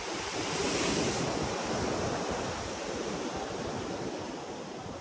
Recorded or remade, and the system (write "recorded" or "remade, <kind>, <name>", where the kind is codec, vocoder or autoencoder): recorded